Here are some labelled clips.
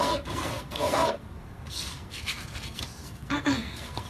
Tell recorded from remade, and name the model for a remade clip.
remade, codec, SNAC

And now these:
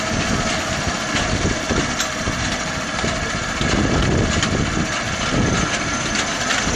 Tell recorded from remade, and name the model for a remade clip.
recorded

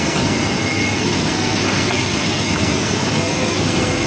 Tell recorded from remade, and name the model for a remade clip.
remade, codec, SNAC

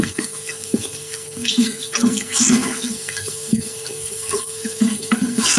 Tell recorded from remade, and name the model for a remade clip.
remade, codec, SNAC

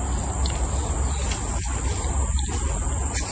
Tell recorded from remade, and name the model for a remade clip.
recorded